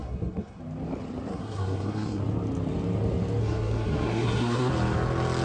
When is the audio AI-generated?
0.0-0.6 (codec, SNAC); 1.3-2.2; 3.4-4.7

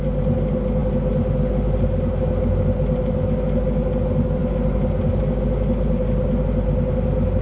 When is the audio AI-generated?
none

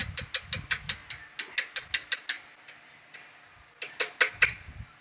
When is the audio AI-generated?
none

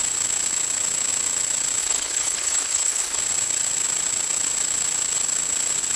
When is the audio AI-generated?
1.8-3.2 (codec, HILCodec)

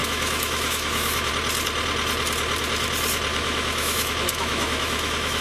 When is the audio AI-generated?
0.0-1.3 (autoencoder, DAC-VAE); 3.3-5.4

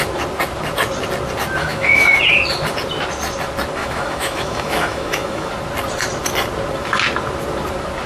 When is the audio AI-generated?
1.6-2.2 (autoencoder, DAC-VAE); 3.8-5.5

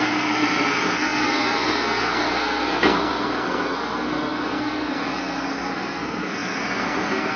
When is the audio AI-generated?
0.0-7.4 (codec, SNAC)

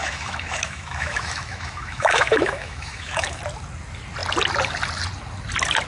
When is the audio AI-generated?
0.0-3.4 (autoencoder, DAC-VAE)